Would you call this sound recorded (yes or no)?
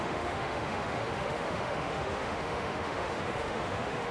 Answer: no